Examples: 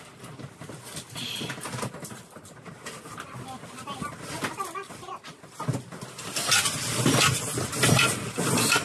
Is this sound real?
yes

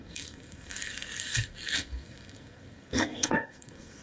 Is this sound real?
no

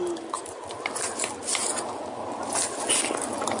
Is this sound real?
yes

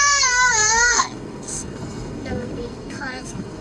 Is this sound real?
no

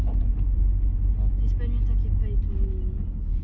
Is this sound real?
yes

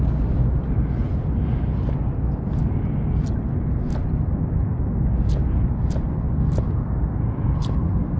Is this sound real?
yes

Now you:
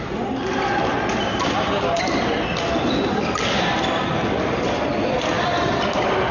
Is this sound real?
yes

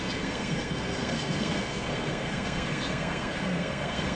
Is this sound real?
no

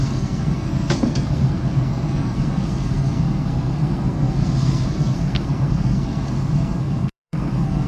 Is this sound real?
no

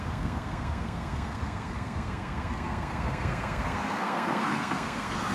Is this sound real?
no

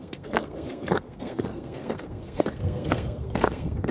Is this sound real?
no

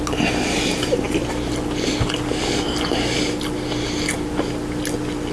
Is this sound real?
yes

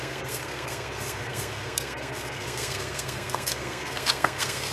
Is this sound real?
no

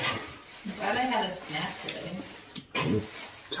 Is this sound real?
yes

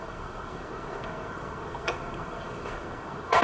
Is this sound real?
no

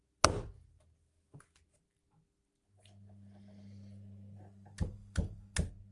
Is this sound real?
yes